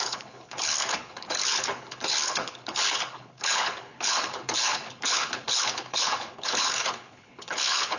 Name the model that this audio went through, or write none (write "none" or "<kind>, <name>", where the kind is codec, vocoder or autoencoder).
codec, HILCodec